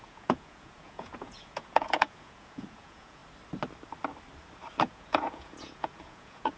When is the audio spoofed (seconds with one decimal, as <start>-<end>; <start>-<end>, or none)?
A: 0.0-3.2; 4.8-6.6